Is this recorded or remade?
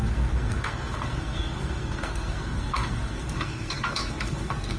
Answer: remade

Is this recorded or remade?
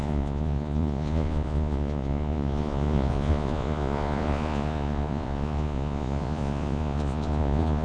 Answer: remade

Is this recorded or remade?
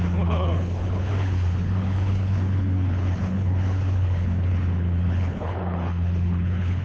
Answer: remade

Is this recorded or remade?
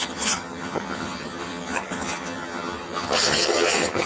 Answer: remade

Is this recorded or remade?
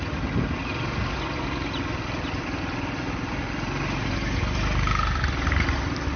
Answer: recorded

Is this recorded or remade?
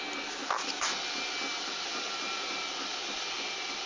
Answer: recorded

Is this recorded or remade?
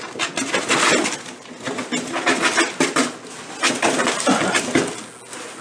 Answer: recorded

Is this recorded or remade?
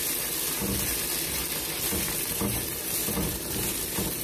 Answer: remade